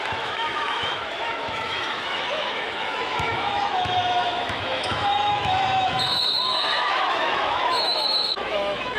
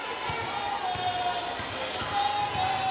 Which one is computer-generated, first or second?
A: first